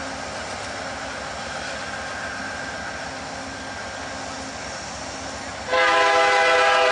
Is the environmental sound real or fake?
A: real